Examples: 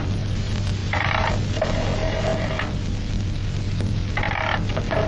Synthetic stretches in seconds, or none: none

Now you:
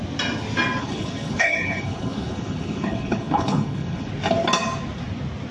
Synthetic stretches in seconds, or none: 0.8-4.1

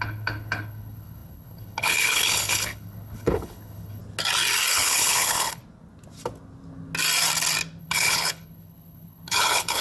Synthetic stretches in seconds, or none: 0.0-4.0; 4.7-5.6; 7.8-9.8

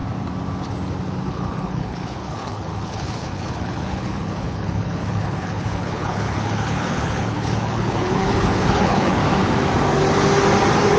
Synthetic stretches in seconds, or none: 1.3-9.2

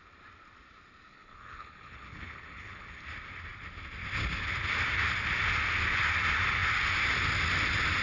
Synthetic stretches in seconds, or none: 1.1-3.0

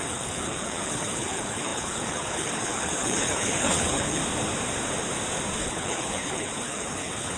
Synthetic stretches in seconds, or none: 0.0-4.2; 5.6-7.4

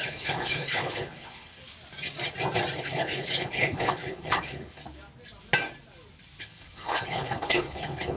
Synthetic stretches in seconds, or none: 0.0-1.6; 2.8-4.8; 6.4-8.2

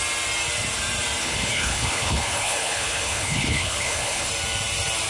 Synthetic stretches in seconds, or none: 1.2-4.3